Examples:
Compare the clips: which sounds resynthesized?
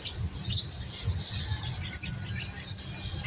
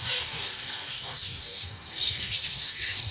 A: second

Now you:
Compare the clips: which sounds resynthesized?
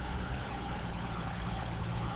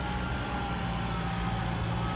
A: first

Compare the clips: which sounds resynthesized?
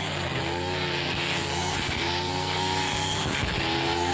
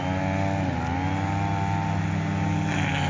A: first